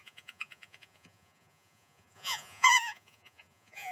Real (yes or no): no